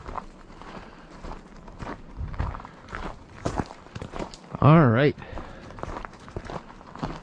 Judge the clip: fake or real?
fake